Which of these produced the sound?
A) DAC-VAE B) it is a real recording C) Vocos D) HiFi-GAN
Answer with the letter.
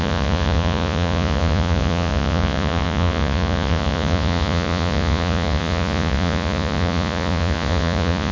C